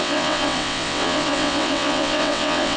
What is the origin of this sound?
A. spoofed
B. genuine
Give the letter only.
A